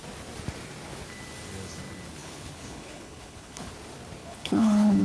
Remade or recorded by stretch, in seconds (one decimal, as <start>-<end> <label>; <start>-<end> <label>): 0.0-2.2 recorded; 2.2-3.7 remade; 3.7-4.2 recorded; 4.2-5.0 remade